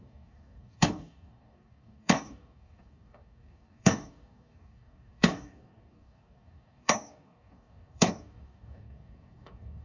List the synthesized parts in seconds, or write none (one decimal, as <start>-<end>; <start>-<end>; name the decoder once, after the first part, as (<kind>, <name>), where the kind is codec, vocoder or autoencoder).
0.0-9.8 (codec, DAC)